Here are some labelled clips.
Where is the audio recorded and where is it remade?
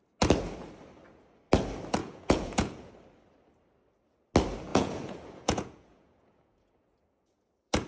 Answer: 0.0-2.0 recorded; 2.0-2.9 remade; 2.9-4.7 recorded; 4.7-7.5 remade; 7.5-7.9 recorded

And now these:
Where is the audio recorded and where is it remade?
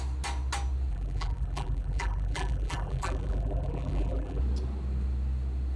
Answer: 0.0-0.9 recorded; 0.9-4.4 remade; 4.4-5.8 recorded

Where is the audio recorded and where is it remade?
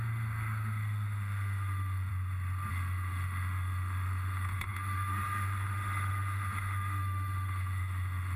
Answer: 0.0-2.1 remade; 2.1-2.7 recorded; 2.7-8.4 remade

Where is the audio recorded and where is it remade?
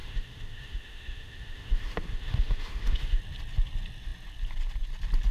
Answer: 0.0-3.2 remade; 3.2-5.3 recorded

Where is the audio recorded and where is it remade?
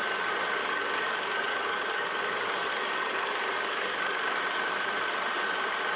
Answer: 0.0-0.6 recorded; 0.6-2.2 remade; 2.2-2.7 recorded; 2.7-4.4 remade; 4.4-6.0 recorded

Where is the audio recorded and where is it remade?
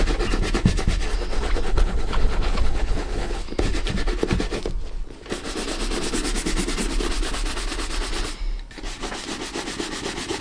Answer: 0.0-1.7 recorded; 1.7-3.5 remade; 3.5-10.4 recorded